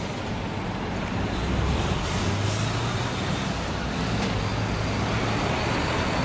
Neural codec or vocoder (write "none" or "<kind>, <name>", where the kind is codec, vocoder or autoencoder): none